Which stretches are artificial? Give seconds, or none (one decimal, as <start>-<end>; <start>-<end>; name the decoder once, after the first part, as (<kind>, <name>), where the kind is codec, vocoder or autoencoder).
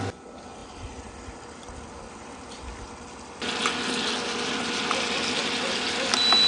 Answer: 0.6-2.8 (vocoder, BigVGAN v2)